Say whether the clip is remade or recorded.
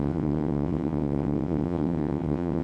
remade